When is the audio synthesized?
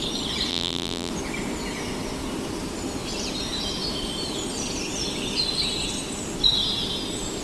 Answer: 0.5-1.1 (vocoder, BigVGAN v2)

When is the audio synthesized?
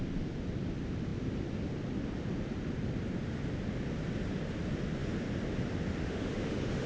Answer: 6.0-6.9 (autoencoder, DAC-VAE)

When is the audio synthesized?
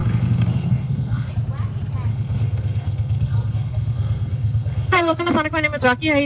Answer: 0.0-1.3 (codec, SNAC); 2.1-5.3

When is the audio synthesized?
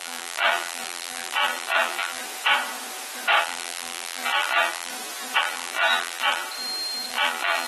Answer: 0.0-2.2 (vocoder, BigVGAN v2); 3.4-4.9; 5.4-6.4; 7.1-7.7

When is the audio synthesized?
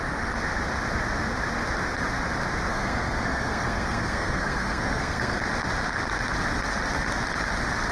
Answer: 2.7-5.4 (codec, SNAC)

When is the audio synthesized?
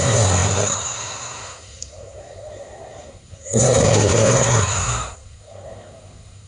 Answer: 0.0-6.5 (codec, SNAC)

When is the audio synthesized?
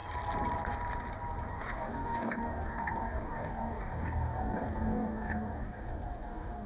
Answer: 1.5-6.7 (codec, DAC)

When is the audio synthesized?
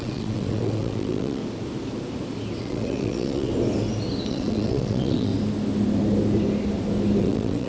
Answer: 0.0-1.4 (vocoder, WaveNeXt); 2.6-3.5; 4.3-5.3; 7.2-7.7